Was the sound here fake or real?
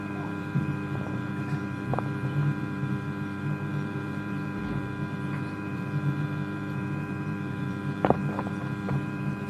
fake